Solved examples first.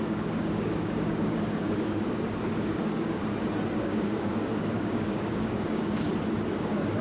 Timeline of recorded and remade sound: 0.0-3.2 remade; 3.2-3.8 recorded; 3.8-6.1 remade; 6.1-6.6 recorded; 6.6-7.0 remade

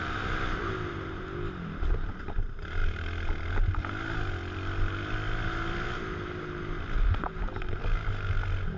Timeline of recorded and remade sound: 0.0-8.8 recorded